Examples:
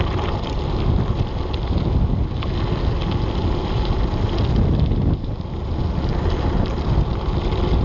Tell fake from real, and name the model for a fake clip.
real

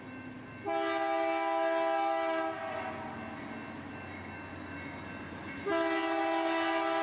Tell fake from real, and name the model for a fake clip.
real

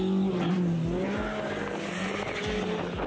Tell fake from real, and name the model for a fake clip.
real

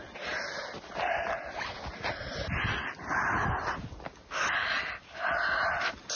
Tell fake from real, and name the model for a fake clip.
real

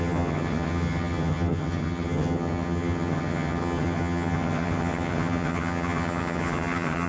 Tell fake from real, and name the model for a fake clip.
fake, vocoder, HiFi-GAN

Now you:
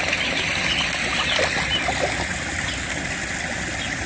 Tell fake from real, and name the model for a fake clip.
real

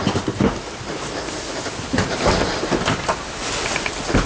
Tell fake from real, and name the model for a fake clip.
real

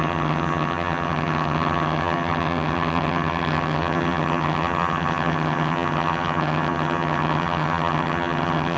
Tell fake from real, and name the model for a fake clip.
fake, vocoder, HiFi-GAN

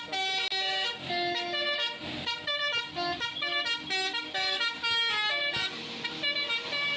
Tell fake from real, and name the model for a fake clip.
real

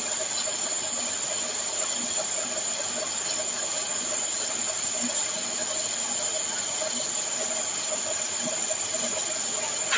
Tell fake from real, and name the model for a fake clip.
real